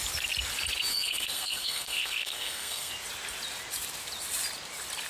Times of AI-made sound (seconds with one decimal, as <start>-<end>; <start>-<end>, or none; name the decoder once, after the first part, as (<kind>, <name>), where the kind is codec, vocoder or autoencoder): 0.9-2.9 (codec, SNAC)